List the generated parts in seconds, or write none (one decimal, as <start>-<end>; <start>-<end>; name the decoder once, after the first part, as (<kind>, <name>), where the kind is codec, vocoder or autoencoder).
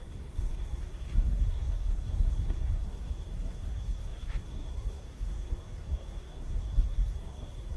0.0-7.8 (codec, SNAC)